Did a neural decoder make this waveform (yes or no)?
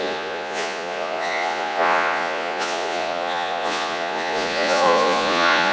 yes